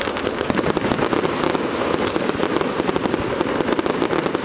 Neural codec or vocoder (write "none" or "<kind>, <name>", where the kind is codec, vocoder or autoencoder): none